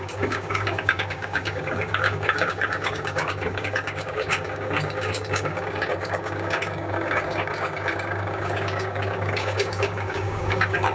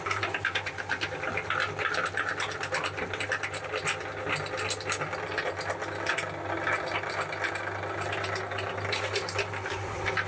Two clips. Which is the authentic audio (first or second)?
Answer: second